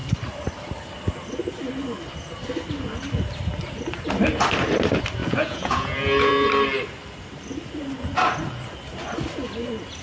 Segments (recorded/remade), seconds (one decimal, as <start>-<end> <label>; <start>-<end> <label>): 0.0-5.2 recorded; 5.2-6.5 remade; 6.5-10.0 recorded